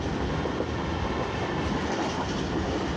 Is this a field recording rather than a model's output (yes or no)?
yes